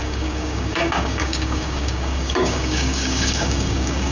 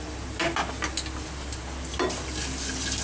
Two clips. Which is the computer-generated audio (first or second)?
first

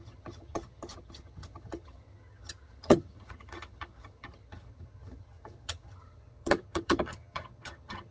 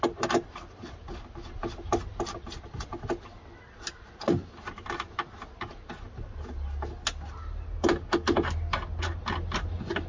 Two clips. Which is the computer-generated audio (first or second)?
first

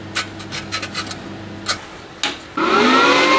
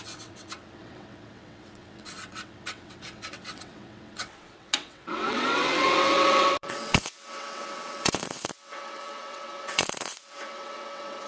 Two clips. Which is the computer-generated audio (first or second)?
second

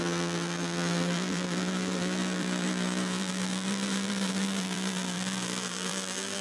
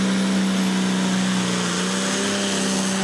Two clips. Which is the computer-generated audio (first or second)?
first